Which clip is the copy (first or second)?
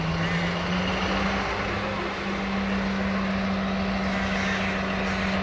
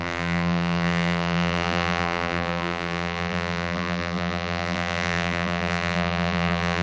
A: second